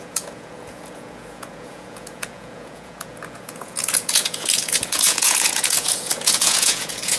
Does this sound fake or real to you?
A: fake